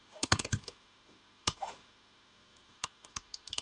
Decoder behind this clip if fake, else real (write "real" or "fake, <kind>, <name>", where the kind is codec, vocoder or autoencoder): fake, autoencoder, DAC-VAE